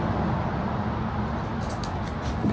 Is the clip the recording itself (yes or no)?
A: yes